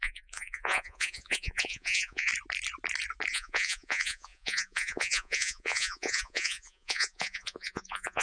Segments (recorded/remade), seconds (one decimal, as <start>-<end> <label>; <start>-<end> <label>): 0.0-2.3 remade; 2.3-3.3 recorded; 3.3-8.2 remade